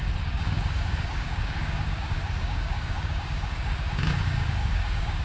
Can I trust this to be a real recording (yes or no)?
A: no